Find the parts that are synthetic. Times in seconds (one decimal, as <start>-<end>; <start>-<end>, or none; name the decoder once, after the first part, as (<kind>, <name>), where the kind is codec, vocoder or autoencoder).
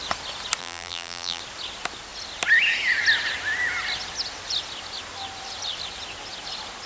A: 0.6-1.4 (vocoder, BigVGAN v2)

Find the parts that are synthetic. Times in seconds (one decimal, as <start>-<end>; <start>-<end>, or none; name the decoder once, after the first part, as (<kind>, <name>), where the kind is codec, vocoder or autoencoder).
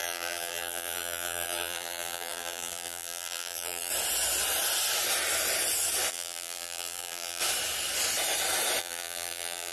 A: 0.0-3.9 (vocoder, BigVGAN v2); 6.1-7.4; 8.8-9.7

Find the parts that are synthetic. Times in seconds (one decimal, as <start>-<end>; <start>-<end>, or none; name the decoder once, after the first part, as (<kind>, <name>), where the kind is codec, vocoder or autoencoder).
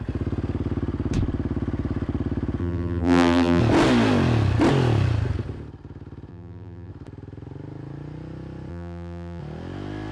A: 2.6-3.6 (vocoder, BigVGAN v2); 6.3-6.9; 8.7-9.4